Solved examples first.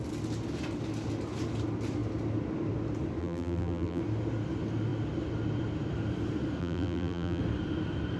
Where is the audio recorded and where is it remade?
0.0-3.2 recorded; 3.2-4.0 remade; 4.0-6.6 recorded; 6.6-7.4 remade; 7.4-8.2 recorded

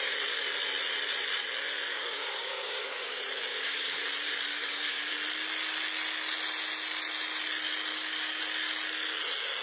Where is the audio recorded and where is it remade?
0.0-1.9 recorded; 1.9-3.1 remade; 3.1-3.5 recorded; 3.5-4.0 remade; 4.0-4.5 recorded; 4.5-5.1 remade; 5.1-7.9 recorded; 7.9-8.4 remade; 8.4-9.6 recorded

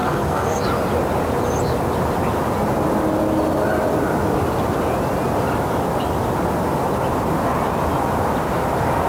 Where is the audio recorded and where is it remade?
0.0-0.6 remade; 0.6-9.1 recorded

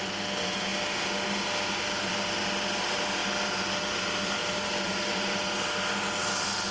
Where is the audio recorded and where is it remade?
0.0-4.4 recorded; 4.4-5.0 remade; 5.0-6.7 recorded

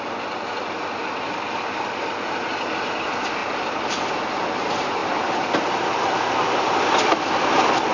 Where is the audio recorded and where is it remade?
0.0-3.4 recorded; 3.4-4.2 remade; 4.2-5.0 recorded; 5.0-6.6 remade; 6.6-7.9 recorded

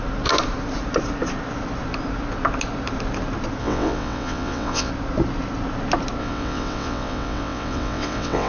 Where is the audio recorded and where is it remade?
0.0-3.6 recorded; 3.6-4.9 remade; 4.9-6.2 recorded; 6.2-8.5 remade

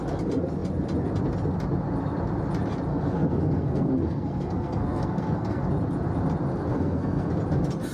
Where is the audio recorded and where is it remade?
0.0-2.9 recorded; 2.9-5.6 remade; 5.6-6.7 recorded; 6.7-7.3 remade; 7.3-7.9 recorded

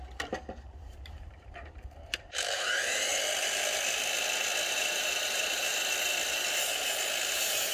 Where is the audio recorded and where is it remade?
0.0-3.1 remade; 3.1-4.7 recorded; 4.7-5.7 remade; 5.7-7.3 recorded; 7.3-7.7 remade